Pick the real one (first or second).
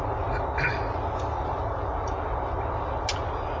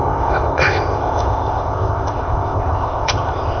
first